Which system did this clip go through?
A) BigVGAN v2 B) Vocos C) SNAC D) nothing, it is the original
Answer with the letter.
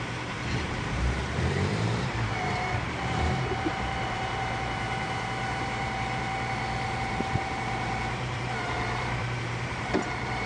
A